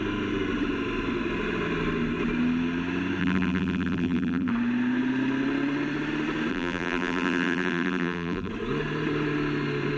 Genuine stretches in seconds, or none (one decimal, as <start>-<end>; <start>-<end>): 0.0-3.2; 4.5-6.5; 8.5-10.0